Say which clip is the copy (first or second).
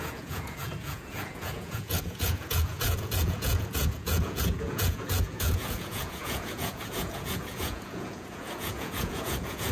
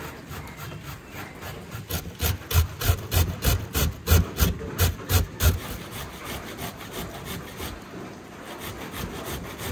first